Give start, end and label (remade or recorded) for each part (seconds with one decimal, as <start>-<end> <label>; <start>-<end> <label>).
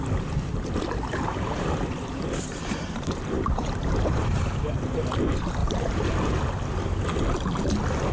0.0-1.3 recorded; 1.3-5.1 remade; 5.1-5.6 recorded; 5.6-6.1 remade; 6.1-8.1 recorded